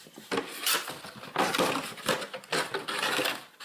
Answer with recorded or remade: recorded